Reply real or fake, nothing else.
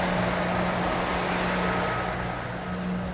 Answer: real